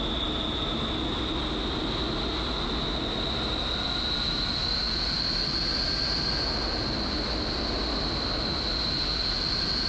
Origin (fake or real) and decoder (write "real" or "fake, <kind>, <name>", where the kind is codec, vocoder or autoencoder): real